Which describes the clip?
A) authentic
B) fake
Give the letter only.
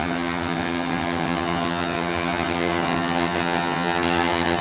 B